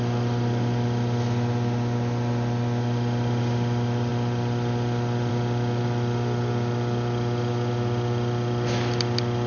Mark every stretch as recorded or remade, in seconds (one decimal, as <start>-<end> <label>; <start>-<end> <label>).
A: 0.0-9.5 recorded